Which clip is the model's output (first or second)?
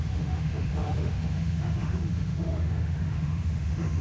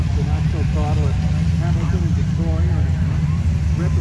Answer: first